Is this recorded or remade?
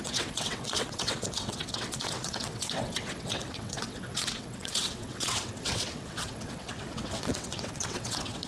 remade